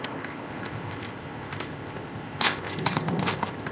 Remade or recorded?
remade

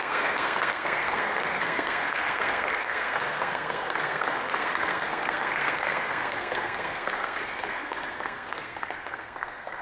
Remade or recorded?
remade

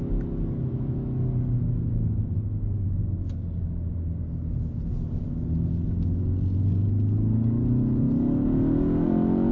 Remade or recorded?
recorded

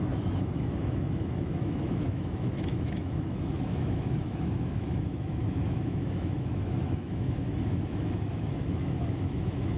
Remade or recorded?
remade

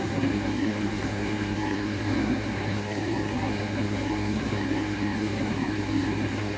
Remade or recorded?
remade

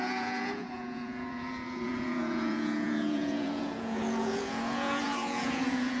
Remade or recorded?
remade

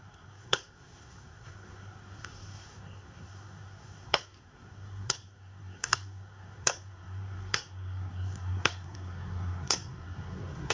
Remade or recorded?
remade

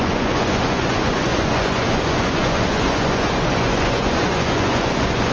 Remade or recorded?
remade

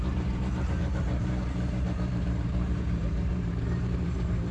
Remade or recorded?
remade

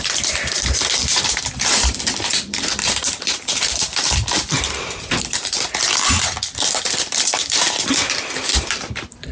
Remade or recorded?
remade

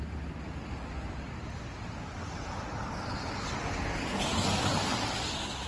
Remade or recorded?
recorded